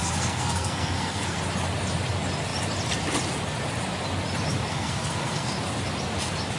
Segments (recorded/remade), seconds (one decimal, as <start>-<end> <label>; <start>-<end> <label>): 0.0-1.4 remade; 1.4-4.7 recorded; 4.7-5.5 remade; 5.5-6.6 recorded